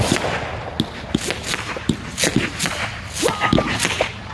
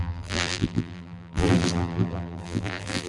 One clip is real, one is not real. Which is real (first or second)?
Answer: first